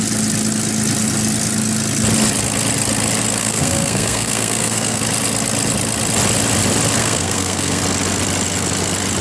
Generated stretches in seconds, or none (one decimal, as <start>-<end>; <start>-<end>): 3.4-5.0; 7.0-7.8